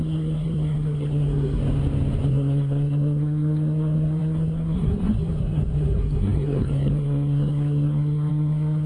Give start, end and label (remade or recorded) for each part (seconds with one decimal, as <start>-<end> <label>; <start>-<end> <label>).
0.0-1.6 remade; 1.6-2.3 recorded; 2.3-8.9 remade